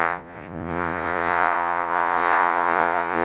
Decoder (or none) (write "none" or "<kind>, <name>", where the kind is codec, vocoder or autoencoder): vocoder, Vocos